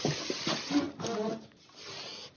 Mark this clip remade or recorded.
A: recorded